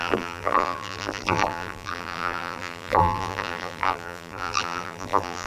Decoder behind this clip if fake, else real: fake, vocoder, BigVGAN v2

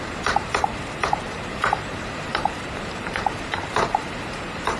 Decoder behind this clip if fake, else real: fake, vocoder, BigVGAN v2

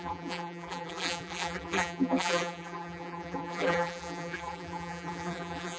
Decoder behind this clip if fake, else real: fake, vocoder, BigVGAN v2